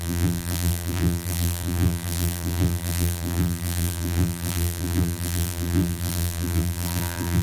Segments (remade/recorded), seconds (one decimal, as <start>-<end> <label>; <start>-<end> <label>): 0.0-7.4 remade